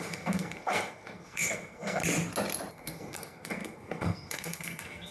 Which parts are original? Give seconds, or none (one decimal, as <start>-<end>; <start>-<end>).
2.0-2.7